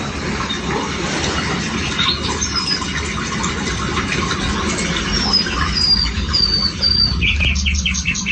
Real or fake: real